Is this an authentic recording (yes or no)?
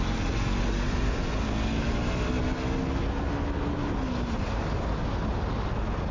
yes